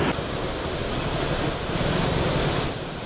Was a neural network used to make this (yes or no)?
no